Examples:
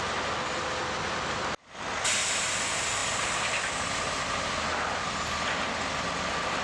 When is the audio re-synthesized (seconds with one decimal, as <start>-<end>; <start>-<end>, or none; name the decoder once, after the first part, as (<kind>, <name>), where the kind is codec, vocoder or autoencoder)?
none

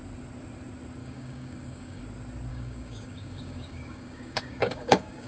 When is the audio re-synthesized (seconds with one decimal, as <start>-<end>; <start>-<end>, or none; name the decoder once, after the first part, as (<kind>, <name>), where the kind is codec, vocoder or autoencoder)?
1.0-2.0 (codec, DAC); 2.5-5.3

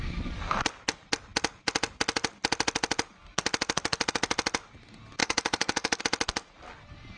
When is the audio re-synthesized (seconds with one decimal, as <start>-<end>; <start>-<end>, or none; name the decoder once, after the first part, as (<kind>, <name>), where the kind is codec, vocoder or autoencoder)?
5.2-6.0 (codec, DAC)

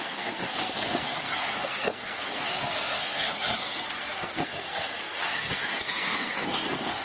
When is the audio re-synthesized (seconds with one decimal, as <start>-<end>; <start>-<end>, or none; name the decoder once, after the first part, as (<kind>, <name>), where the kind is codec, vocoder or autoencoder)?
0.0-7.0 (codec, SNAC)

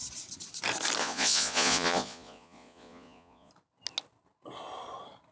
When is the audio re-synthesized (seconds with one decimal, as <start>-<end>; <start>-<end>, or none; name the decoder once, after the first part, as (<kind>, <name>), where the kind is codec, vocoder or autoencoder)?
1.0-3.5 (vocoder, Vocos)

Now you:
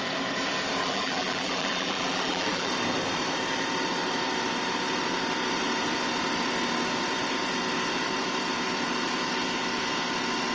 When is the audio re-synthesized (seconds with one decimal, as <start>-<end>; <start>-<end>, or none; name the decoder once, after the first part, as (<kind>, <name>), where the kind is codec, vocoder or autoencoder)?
0.8-2.7 (vocoder, BigVGAN v2)